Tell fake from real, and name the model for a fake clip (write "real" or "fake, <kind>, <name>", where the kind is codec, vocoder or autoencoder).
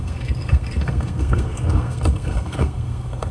fake, codec, SNAC